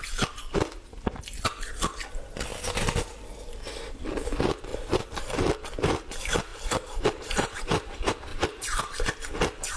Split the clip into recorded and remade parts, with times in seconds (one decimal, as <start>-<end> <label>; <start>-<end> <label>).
0.0-4.7 recorded; 4.7-5.4 remade; 5.4-6.5 recorded; 6.5-7.6 remade; 7.6-8.3 recorded; 8.3-8.8 remade; 8.8-9.8 recorded